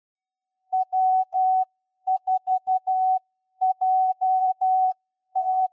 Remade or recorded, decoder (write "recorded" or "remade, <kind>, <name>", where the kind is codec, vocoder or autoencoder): remade, codec, SNAC